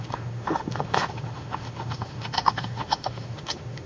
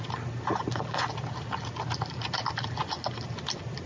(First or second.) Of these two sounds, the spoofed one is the first